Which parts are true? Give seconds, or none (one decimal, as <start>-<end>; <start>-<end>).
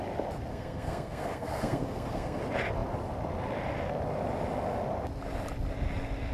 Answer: 0.0-0.5; 2.4-6.3